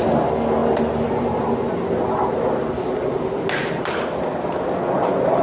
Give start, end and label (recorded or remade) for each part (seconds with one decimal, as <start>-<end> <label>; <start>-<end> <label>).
0.0-5.4 recorded